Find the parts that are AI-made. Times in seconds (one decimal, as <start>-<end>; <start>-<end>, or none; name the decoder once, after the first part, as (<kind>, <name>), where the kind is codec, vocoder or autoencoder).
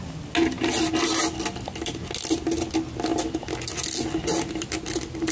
none